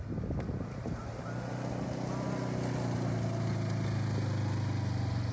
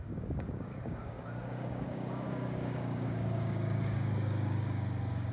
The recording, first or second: first